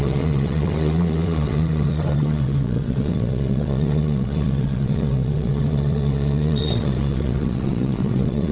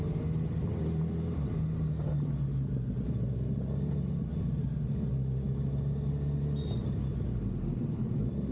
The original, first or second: second